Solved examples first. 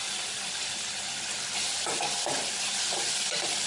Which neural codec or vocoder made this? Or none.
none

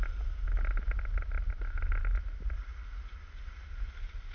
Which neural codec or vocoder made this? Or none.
none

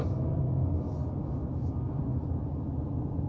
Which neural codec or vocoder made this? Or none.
none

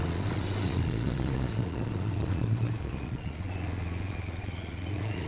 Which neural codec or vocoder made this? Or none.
vocoder, Vocos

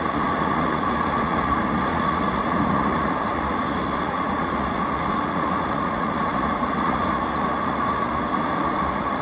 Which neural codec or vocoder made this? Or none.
vocoder, Vocos